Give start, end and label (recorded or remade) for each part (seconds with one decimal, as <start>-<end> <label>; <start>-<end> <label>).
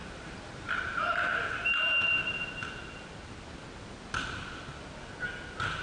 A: 0.0-0.7 remade; 0.7-5.8 recorded